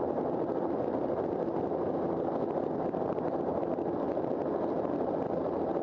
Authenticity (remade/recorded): recorded